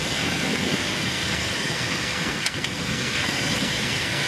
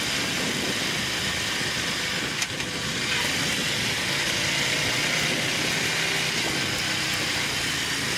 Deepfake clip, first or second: first